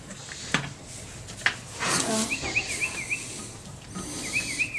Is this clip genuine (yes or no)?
yes